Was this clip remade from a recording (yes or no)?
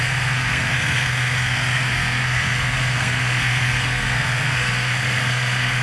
yes